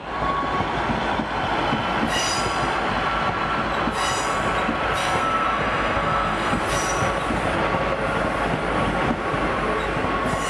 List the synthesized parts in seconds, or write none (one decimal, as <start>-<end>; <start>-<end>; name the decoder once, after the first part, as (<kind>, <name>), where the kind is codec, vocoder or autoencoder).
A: 5.0-6.6 (codec, SNAC)